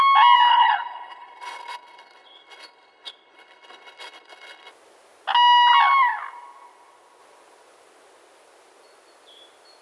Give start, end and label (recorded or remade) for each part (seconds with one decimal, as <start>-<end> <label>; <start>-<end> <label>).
0.0-0.5 recorded; 0.5-4.7 remade; 4.7-9.8 recorded